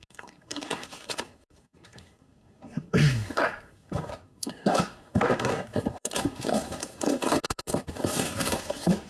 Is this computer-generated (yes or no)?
yes